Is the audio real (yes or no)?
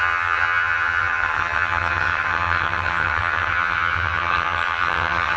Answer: no